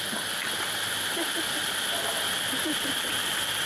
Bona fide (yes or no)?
yes